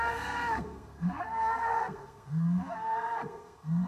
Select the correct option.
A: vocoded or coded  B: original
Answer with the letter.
A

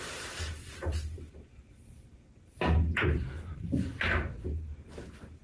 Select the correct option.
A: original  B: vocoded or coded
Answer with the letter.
B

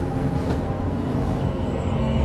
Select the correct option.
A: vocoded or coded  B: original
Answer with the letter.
A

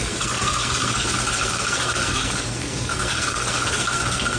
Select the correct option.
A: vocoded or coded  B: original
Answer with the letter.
A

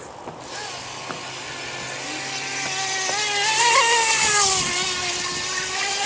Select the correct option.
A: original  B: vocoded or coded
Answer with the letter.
A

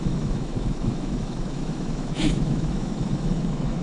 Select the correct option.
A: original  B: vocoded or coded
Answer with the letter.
B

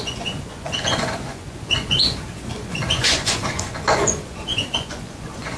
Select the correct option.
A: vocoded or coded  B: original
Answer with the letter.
A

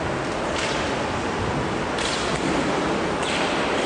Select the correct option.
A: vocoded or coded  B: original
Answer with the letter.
B